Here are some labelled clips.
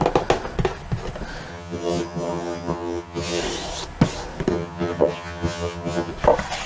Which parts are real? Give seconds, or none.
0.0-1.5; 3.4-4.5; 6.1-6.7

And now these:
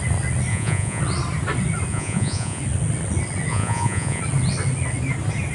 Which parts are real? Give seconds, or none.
0.0-0.5; 1.0-1.9; 2.6-3.5; 4.2-5.5

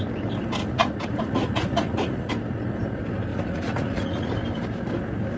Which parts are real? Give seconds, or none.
0.0-0.6; 2.3-3.3; 4.3-5.4

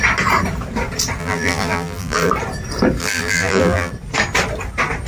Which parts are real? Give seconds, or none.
0.0-1.2; 2.3-3.0; 3.9-5.1

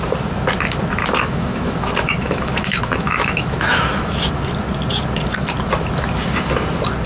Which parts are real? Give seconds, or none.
0.0-1.0; 4.3-7.1

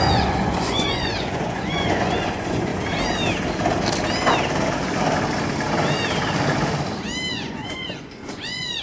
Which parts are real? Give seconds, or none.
2.7-7.3